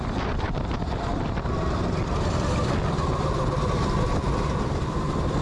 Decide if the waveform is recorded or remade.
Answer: recorded